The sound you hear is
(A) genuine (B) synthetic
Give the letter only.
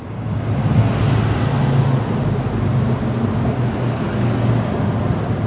A